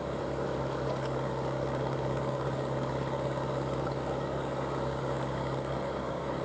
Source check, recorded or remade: remade